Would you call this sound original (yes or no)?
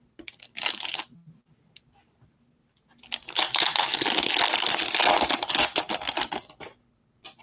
yes